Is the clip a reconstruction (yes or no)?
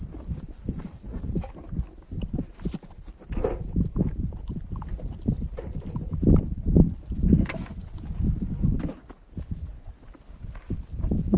no